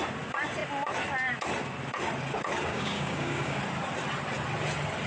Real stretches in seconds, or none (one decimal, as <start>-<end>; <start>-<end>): 0.0-2.7; 3.6-5.1